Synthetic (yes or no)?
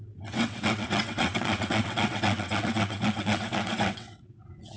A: yes